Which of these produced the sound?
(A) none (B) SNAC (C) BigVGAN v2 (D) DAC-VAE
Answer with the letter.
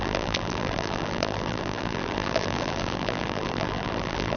C